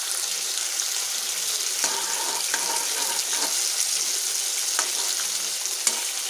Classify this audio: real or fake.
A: real